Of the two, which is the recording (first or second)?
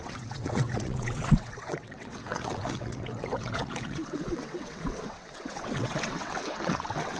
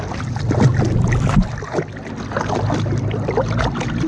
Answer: second